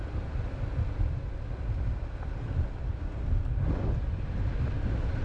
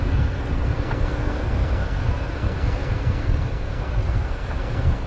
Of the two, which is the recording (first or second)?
first